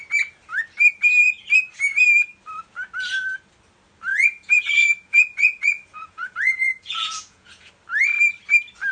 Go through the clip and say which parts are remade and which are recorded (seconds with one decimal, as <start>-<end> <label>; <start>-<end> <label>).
0.0-4.1 recorded; 4.1-7.7 remade; 7.7-8.9 recorded